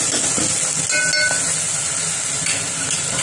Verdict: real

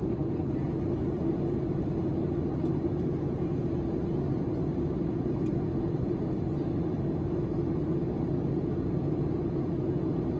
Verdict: real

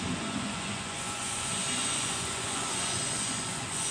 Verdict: fake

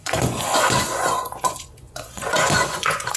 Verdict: fake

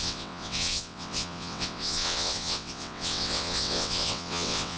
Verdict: fake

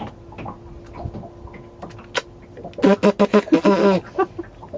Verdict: real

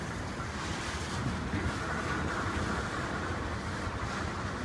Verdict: real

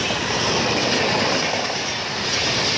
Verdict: real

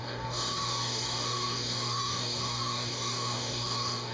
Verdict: fake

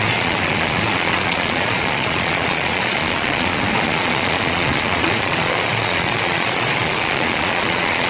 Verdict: fake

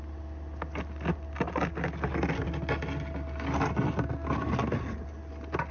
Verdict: real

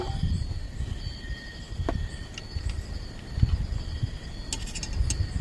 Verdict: real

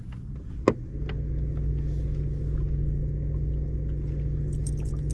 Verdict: real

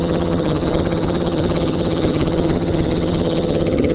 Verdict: fake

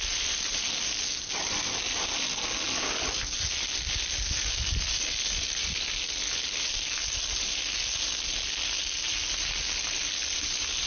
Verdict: real